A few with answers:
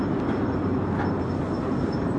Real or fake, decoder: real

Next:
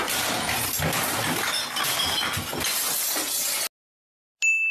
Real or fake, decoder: real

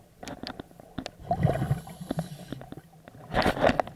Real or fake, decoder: real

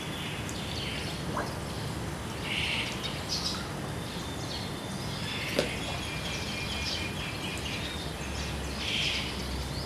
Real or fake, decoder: real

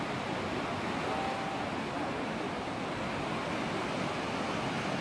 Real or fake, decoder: real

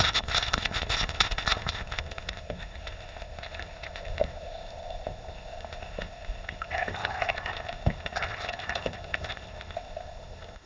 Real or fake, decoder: fake, codec, ZipCodec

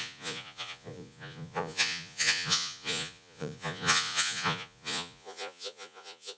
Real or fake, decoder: fake, vocoder, Vocos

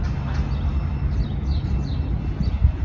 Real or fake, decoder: real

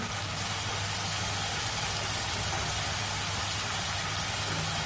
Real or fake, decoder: real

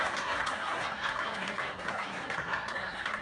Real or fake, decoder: fake, codec, SNAC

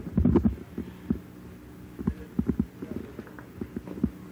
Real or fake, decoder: real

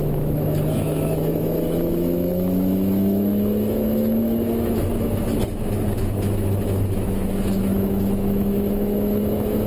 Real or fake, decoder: fake, autoencoder, DAC-VAE